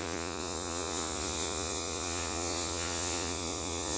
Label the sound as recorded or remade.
remade